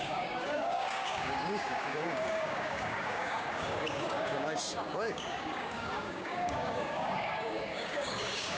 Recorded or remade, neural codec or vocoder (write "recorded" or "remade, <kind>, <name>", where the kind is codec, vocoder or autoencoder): remade, codec, DAC